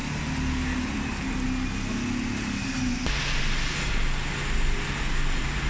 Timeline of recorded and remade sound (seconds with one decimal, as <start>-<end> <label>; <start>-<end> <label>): 0.0-5.7 recorded